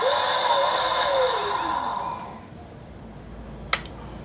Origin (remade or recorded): recorded